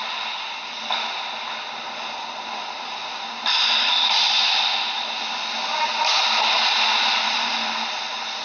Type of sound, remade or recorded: recorded